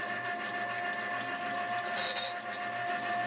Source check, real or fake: real